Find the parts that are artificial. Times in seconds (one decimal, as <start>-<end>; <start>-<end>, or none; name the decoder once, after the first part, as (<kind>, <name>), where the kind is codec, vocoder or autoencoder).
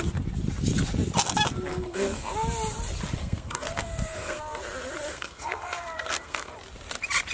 1.7-2.3 (codec, SNAC); 3.2-4.4; 5.1-6.5